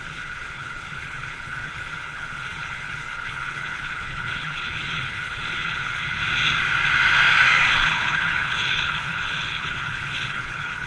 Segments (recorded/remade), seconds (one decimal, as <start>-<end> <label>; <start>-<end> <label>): 0.0-6.2 remade; 6.2-7.7 recorded; 7.7-10.9 remade